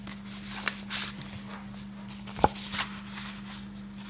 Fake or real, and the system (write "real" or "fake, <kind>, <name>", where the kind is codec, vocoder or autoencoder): real